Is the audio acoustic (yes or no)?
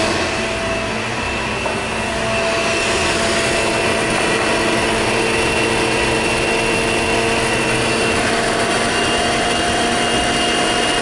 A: yes